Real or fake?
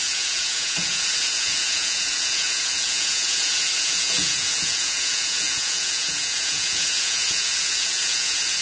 fake